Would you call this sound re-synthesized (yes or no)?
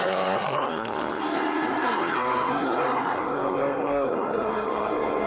yes